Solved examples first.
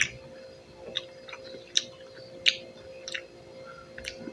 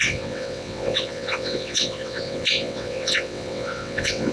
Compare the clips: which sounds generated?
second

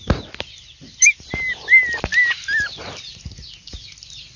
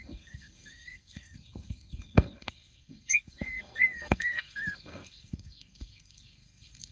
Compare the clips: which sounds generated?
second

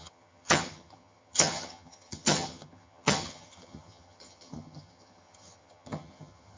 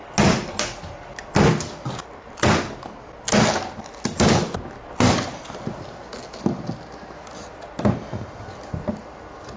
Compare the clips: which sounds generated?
first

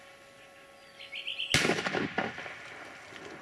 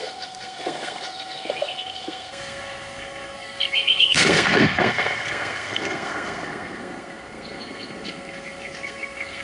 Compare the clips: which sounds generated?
second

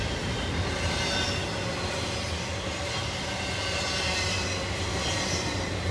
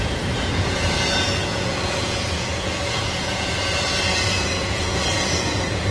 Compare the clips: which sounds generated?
second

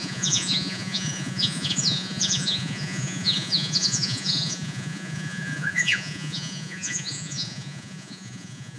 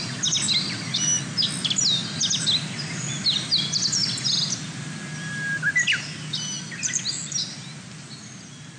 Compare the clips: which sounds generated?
first